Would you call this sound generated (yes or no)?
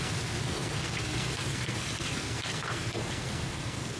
yes